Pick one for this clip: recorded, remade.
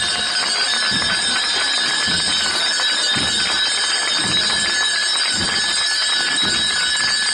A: recorded